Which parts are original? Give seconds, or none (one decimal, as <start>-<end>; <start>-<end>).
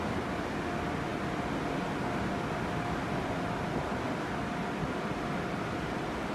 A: 0.0-6.3